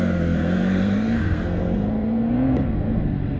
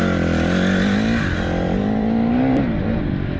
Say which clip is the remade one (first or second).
first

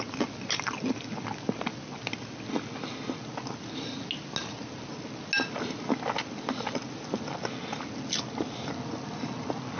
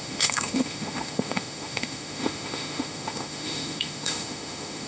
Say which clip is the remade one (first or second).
second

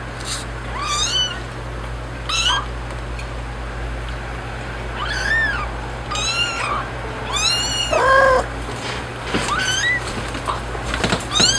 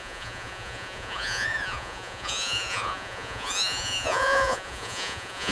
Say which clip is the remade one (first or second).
second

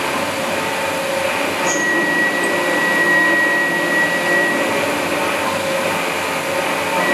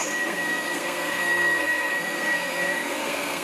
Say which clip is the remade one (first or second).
second